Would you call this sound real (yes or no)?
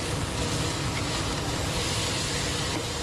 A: yes